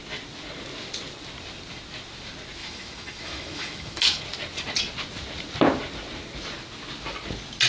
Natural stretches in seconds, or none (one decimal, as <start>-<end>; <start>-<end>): 0.0-2.6; 4.2-7.7